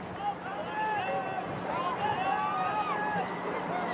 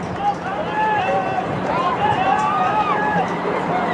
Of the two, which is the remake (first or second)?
second